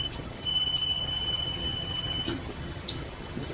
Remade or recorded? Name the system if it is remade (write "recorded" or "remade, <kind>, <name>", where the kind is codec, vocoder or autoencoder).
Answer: remade, vocoder, HiFi-GAN